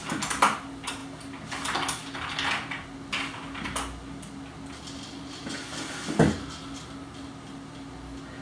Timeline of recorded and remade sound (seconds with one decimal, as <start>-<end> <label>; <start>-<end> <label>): 0.0-8.4 recorded